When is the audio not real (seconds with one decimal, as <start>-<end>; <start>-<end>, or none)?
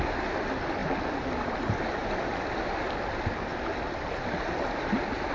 none